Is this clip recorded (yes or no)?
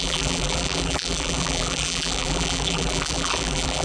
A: no